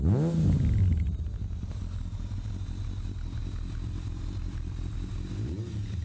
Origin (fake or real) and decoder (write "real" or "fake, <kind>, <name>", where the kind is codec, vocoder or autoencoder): real